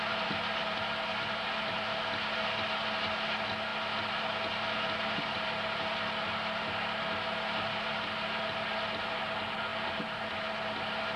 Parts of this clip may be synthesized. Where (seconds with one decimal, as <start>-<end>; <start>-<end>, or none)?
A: 9.7-10.3